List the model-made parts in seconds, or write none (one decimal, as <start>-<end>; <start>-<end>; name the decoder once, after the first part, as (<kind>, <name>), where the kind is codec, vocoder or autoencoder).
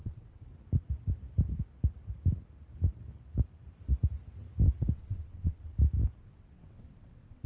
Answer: 0.0-0.5 (vocoder, WaveNeXt); 4.9-5.7; 6.2-7.5